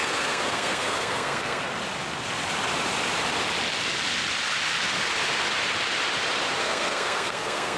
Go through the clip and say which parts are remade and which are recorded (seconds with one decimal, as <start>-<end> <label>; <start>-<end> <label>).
0.0-1.6 remade; 1.6-6.6 recorded; 6.6-7.8 remade